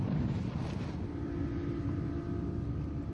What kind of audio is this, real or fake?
real